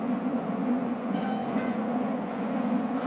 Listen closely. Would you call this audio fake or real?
fake